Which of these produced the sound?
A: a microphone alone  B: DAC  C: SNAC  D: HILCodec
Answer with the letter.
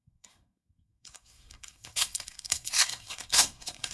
C